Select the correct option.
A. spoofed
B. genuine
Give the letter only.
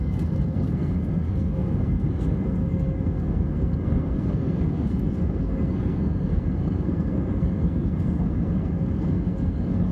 A